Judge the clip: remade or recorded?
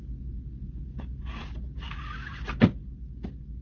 recorded